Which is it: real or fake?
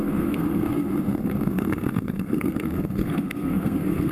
fake